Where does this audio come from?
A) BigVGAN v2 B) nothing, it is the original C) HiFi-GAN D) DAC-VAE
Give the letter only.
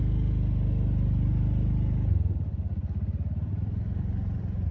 B